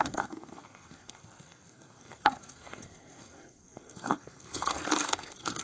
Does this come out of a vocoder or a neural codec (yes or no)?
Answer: yes